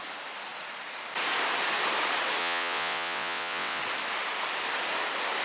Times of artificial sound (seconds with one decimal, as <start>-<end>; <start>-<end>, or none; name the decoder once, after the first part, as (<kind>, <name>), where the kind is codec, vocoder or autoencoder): 2.4-3.8 (vocoder, WaveNeXt)